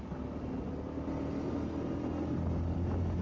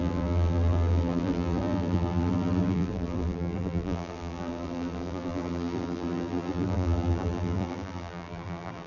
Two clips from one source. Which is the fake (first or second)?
second